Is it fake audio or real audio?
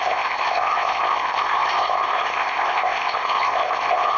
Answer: fake